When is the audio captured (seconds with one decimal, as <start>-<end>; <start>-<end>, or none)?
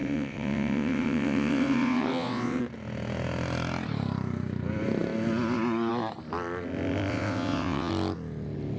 2.6-7.1; 7.9-8.8